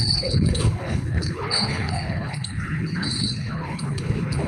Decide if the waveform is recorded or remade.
remade